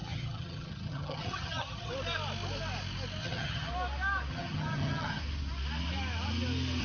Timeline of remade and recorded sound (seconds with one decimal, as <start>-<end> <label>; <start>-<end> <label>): 0.0-1.9 remade; 1.9-3.2 recorded; 3.2-3.7 remade; 3.7-4.3 recorded; 4.3-5.2 remade; 5.2-6.8 recorded